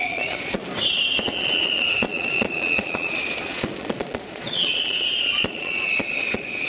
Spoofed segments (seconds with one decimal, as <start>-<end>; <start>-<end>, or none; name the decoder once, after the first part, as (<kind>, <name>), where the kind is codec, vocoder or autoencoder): 0.0-0.6 (vocoder, Vocos); 1.2-6.7